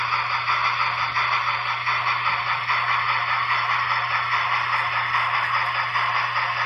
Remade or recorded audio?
recorded